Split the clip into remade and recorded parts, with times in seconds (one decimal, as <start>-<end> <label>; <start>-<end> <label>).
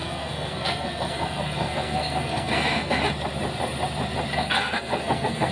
0.0-3.0 remade; 3.0-4.3 recorded; 4.3-5.5 remade